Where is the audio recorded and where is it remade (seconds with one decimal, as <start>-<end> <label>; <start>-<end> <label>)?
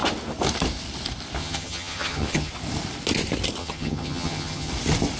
0.0-1.4 recorded; 1.4-2.5 remade; 2.5-3.6 recorded; 3.6-4.7 remade; 4.7-5.2 recorded